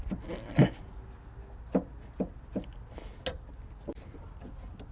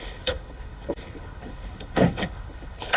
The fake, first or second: second